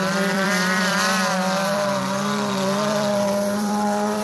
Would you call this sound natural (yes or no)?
no